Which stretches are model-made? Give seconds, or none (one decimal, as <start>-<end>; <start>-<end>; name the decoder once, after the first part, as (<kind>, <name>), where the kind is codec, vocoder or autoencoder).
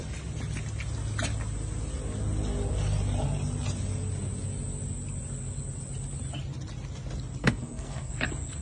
7.4-8.1 (codec, SNAC)